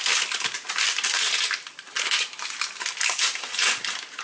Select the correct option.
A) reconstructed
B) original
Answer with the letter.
B